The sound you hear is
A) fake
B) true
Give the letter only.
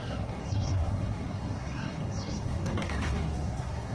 A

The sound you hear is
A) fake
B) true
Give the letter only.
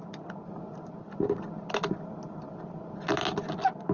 B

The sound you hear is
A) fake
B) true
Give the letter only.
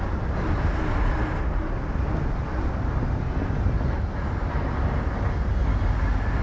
B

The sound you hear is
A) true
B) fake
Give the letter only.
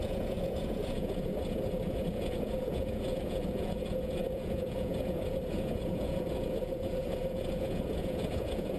B